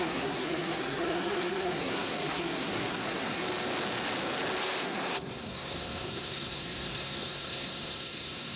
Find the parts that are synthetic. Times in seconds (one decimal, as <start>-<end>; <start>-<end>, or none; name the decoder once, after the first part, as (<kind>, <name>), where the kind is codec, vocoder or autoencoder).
0.0-3.4 (codec, SNAC); 4.8-8.6